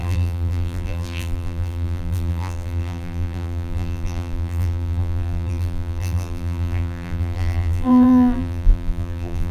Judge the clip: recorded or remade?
remade